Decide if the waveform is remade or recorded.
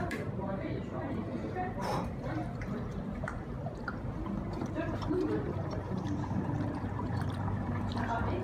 remade